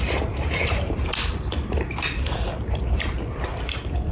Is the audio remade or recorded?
remade